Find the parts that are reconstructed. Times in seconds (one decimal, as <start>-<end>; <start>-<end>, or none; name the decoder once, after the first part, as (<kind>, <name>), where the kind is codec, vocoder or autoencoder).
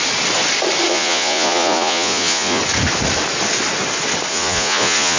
0.9-2.6 (vocoder, Vocos); 4.3-5.2